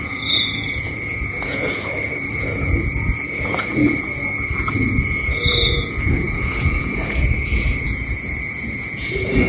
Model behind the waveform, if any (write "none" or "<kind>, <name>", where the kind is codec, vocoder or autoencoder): vocoder, Vocos